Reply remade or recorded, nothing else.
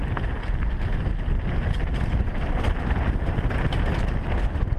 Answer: recorded